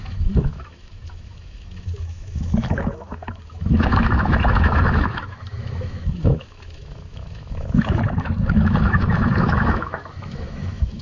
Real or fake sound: fake